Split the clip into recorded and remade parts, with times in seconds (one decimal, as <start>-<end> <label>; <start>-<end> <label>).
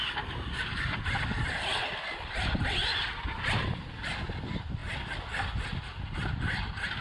0.0-1.0 remade; 1.0-7.0 recorded